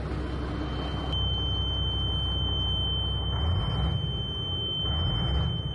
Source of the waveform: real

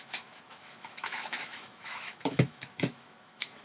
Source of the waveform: fake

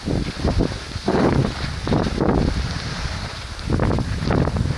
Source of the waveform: real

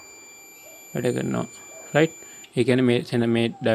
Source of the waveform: real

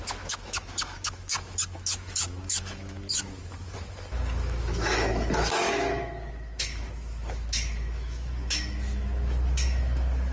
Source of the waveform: fake